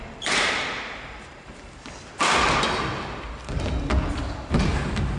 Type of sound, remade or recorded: recorded